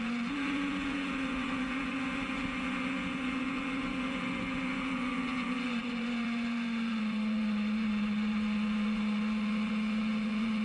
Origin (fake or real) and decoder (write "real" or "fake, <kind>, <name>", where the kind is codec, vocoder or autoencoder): fake, vocoder, Vocos